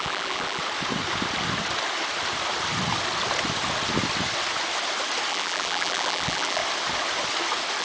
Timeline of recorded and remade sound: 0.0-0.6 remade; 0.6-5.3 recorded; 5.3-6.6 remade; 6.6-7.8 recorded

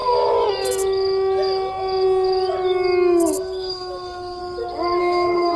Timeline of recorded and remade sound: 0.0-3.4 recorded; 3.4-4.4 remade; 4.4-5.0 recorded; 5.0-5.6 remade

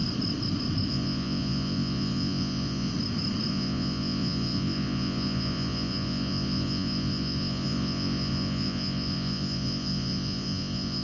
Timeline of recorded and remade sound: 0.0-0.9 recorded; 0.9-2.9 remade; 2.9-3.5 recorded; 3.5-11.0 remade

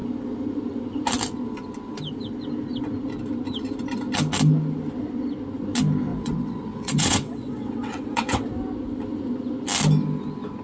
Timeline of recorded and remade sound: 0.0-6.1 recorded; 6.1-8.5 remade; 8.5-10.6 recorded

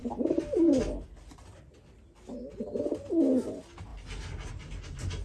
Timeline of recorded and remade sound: 0.0-5.2 recorded

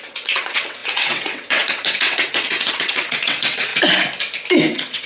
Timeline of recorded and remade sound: 0.0-3.7 remade; 3.7-4.6 recorded; 4.6-5.1 remade

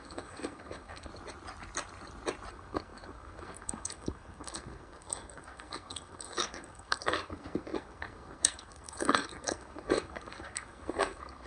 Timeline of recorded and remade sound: 0.0-1.1 remade; 1.1-2.5 recorded; 2.5-11.5 remade